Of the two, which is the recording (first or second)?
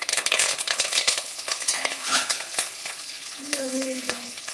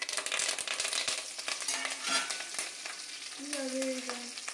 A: second